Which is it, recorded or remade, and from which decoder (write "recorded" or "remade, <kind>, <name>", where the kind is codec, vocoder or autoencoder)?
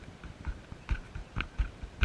recorded